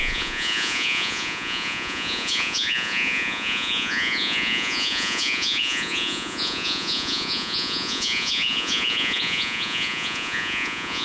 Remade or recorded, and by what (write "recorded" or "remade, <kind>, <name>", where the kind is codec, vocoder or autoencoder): remade, vocoder, Vocos